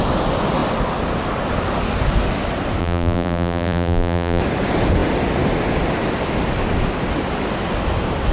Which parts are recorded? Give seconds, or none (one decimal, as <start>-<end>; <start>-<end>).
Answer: 0.0-2.8; 4.4-8.3